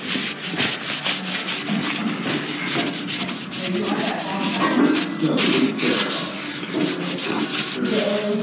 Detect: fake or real real